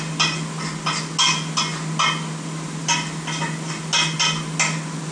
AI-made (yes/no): no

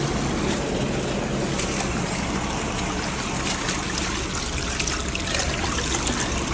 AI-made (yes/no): no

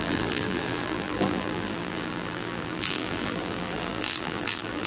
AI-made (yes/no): yes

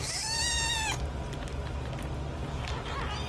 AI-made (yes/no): no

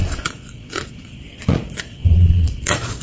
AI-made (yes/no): yes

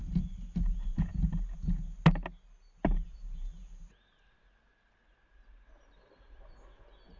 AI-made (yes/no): no